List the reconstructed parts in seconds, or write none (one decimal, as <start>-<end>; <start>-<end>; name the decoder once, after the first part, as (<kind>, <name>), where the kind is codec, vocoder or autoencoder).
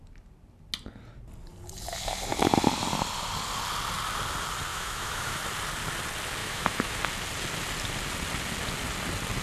4.7-5.4 (autoencoder, DAC-VAE); 6.4-7.0